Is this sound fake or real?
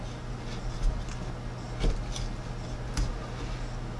real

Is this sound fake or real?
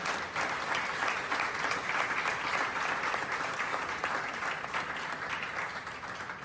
real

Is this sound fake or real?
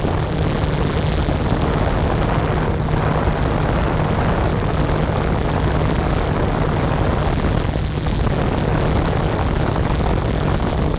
real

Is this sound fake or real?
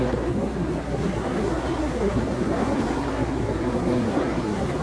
fake